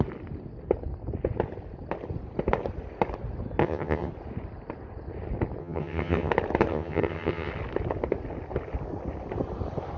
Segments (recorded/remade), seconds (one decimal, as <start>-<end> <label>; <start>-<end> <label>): 0.0-3.6 recorded; 3.6-4.1 remade; 4.1-5.6 recorded; 5.6-6.3 remade; 6.3-6.7 recorded; 6.7-7.5 remade; 7.5-10.0 recorded